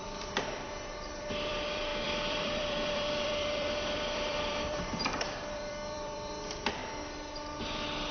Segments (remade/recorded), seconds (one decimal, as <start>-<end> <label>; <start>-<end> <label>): 0.0-6.8 remade; 6.8-7.6 recorded; 7.6-8.1 remade

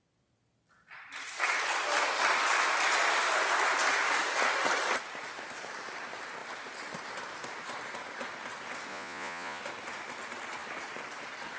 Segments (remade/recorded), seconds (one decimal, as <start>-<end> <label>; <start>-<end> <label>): 0.0-8.9 recorded; 8.9-9.6 remade; 9.6-11.6 recorded

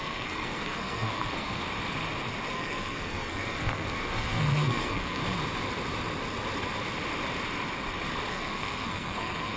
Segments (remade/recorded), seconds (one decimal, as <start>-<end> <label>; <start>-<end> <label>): 0.0-1.6 remade; 1.6-2.5 recorded; 2.5-5.2 remade; 5.2-8.3 recorded; 8.3-9.6 remade

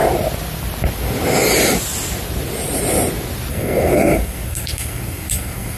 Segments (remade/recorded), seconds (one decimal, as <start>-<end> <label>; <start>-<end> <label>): 0.0-3.5 recorded; 3.5-5.8 remade

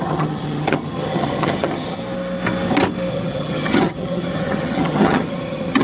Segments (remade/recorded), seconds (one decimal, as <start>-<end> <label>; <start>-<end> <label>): 0.0-2.0 remade; 2.0-3.1 recorded; 3.1-5.8 remade